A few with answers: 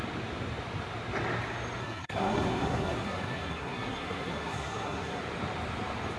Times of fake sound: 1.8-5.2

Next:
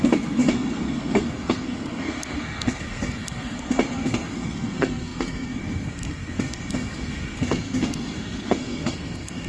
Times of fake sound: 0.0-9.5